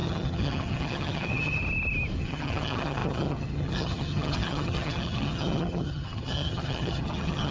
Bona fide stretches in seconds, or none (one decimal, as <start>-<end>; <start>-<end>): 1.6-2.2